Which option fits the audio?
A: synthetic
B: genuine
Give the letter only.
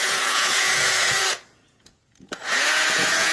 A